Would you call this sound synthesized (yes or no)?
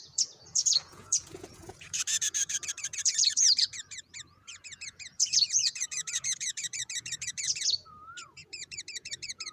yes